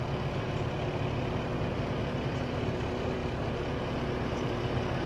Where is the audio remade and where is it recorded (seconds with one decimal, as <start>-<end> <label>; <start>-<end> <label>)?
0.0-5.1 remade